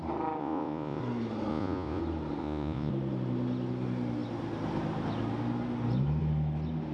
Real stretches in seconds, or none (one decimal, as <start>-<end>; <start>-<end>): 0.0-0.4; 1.0-1.5; 2.0-2.4; 2.9-6.9